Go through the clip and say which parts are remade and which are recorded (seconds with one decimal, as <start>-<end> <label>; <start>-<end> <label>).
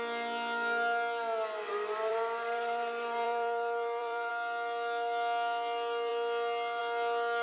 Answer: 0.0-1.7 recorded; 1.7-4.3 remade; 4.3-7.4 recorded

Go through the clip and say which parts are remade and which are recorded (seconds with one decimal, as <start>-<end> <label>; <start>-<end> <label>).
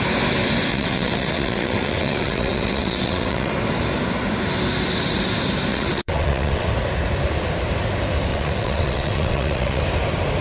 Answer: 0.0-0.7 recorded; 0.7-3.5 remade; 3.5-5.7 recorded; 5.7-6.7 remade; 6.7-8.3 recorded; 8.3-9.8 remade; 9.8-10.4 recorded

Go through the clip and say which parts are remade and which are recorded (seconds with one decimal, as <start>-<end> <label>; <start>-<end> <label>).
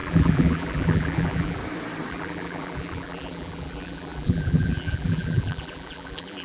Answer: 0.0-1.6 remade; 1.6-2.1 recorded; 2.1-6.4 remade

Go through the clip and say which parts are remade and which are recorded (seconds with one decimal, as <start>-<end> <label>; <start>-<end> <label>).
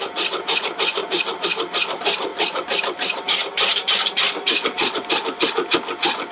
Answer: 0.0-2.3 recorded; 2.3-3.2 remade; 3.2-3.7 recorded; 3.7-5.2 remade; 5.2-6.3 recorded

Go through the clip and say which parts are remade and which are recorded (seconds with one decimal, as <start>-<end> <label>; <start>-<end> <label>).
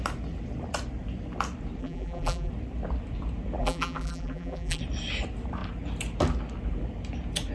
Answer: 0.0-1.8 recorded; 1.8-2.5 remade; 2.5-3.6 recorded; 3.6-4.8 remade; 4.8-7.5 recorded